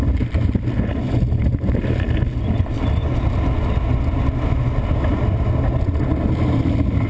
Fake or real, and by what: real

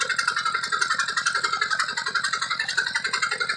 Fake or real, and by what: real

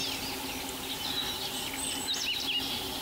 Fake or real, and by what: real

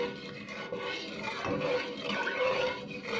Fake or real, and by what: real